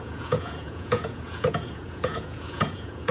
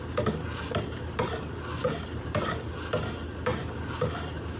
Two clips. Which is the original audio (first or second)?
second